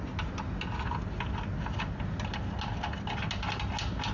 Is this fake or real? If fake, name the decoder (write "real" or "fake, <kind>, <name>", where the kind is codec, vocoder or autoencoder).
real